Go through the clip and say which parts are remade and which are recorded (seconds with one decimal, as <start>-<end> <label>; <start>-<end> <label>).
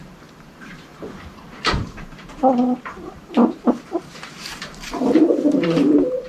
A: 0.0-6.3 remade